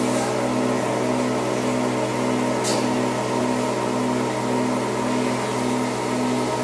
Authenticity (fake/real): real